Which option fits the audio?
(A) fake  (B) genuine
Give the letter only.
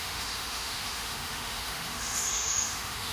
A